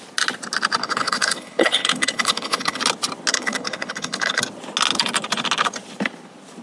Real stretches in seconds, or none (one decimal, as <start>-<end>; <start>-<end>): 0.0-0.8; 2.8-3.3; 4.4-6.6